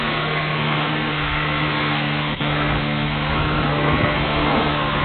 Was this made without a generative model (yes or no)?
no